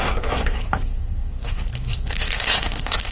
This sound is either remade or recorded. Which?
remade